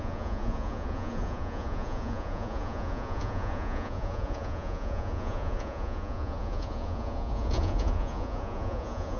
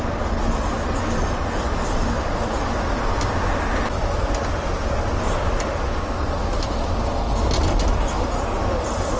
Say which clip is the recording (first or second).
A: second